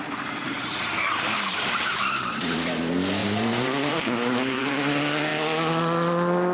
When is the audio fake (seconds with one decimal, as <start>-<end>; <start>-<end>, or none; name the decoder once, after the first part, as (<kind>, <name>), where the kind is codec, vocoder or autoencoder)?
0.4-2.4 (vocoder, BigVGAN v2); 3.2-4.7